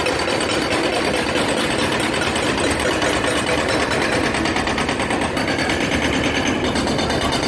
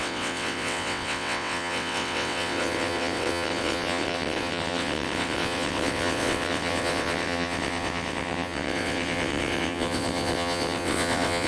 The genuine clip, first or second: first